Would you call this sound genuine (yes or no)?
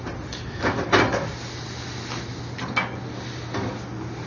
yes